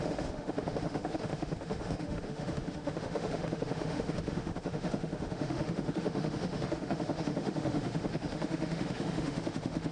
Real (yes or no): no